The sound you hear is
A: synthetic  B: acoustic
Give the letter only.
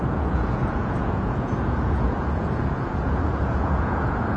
A